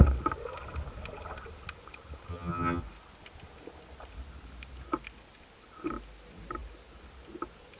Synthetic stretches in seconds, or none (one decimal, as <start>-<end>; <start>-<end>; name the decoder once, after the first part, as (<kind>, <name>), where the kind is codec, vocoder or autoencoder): 2.3-2.8 (vocoder, HiFi-GAN)